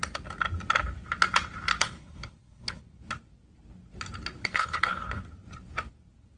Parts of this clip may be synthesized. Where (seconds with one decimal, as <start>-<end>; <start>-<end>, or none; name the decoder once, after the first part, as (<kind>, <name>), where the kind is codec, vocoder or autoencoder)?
1.8-2.8 (codec, HILCodec); 4.4-5.2

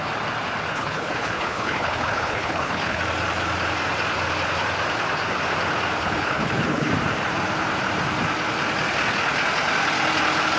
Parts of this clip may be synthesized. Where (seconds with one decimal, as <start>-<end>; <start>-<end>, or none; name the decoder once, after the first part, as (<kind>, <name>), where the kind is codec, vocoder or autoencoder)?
0.7-3.0 (codec, HILCodec); 6.0-6.9

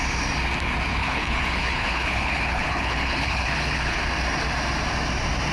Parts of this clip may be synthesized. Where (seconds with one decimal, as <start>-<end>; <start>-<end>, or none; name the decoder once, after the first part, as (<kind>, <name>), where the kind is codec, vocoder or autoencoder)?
1.0-4.0 (codec, HILCodec)

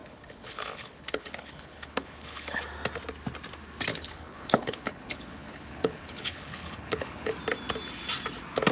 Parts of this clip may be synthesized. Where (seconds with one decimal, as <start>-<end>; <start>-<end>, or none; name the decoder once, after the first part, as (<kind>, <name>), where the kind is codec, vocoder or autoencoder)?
0.0-2.6 (codec, HILCodec); 3.9-7.3

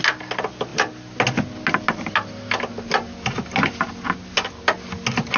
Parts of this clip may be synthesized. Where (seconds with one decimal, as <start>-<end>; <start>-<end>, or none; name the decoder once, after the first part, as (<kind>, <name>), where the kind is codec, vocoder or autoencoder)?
none

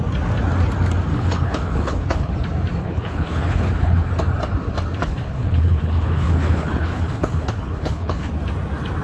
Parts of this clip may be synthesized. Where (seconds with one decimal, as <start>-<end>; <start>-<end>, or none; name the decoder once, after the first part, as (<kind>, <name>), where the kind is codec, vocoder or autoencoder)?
1.1-2.3 (codec, HILCodec); 2.8-4.1; 5.0-8.3

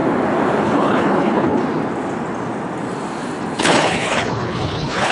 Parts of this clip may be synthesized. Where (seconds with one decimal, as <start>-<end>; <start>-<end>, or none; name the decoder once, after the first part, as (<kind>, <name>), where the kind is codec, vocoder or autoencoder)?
0.6-1.6 (codec, HILCodec); 3.6-5.1